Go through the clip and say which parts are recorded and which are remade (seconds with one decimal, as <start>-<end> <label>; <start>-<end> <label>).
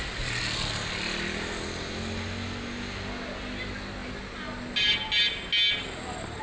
0.0-6.4 recorded